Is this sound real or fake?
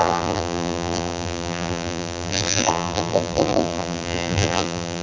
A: fake